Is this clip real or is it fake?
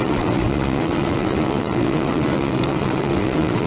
fake